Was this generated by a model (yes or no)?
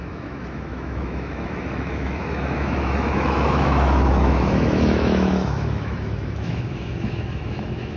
yes